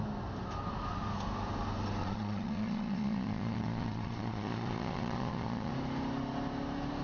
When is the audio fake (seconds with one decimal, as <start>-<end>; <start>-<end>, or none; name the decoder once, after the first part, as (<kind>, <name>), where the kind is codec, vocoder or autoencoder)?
2.0-5.7 (vocoder, Vocos)